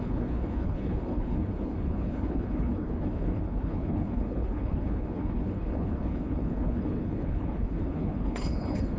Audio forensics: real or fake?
fake